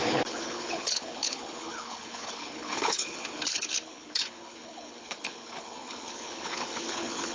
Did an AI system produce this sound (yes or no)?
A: yes